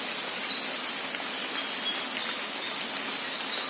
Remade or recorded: recorded